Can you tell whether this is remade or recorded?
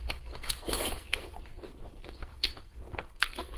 remade